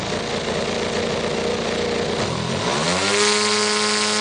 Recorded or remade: recorded